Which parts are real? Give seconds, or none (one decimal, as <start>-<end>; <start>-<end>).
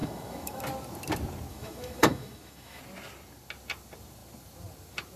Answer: 0.6-1.5; 2.8-5.2